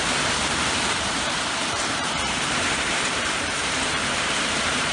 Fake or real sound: fake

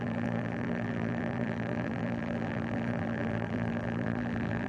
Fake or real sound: fake